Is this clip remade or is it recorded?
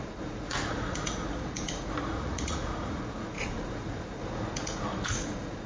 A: remade